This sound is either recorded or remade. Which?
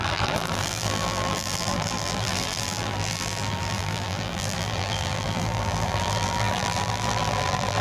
remade